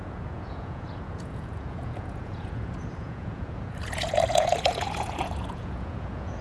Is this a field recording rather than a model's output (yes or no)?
no